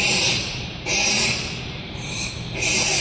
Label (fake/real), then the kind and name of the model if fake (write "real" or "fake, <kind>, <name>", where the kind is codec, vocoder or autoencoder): fake, vocoder, BigVGAN v2